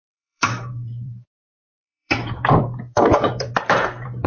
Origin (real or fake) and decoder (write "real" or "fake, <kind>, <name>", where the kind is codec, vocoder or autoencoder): fake, vocoder, BigVGAN v2